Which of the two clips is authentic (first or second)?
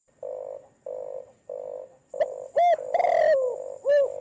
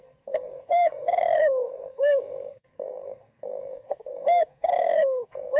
first